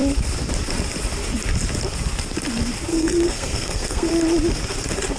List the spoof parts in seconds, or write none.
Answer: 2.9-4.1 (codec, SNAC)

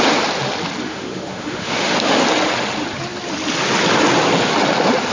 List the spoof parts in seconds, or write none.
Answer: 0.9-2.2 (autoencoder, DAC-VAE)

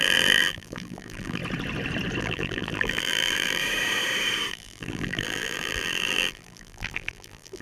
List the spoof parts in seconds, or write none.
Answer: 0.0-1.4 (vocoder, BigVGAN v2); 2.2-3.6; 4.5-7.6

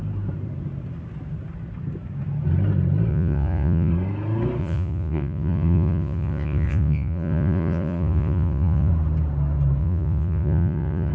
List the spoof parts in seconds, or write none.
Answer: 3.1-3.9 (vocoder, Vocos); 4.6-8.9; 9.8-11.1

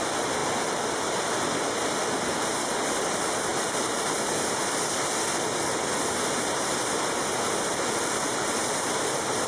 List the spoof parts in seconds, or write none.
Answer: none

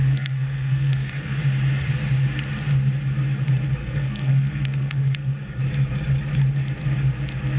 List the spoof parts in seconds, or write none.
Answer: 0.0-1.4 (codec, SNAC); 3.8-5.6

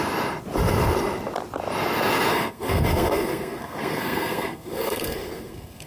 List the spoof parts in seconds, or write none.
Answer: 2.3-5.9 (codec, SNAC)